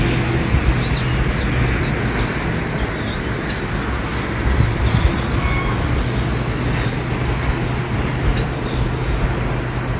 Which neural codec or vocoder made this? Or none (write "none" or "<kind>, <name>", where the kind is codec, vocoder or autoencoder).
none